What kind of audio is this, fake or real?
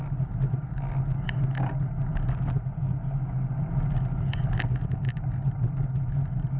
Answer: real